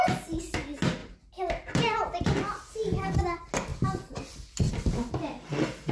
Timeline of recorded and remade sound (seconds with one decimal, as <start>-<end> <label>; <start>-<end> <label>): 0.0-1.0 recorded; 1.0-3.2 remade; 3.2-3.7 recorded; 3.7-4.7 remade; 4.7-5.9 recorded